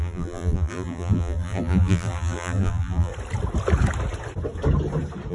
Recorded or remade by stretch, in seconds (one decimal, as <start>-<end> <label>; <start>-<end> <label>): 0.0-3.1 remade; 3.1-5.3 recorded